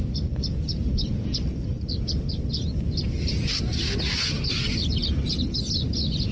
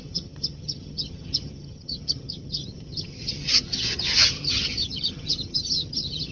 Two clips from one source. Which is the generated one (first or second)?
second